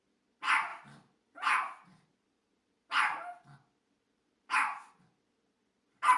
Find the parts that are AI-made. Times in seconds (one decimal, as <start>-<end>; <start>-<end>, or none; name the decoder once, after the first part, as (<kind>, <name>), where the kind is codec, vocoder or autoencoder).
none